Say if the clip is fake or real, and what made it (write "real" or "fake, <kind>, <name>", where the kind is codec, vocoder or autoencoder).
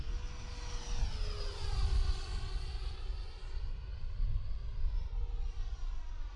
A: real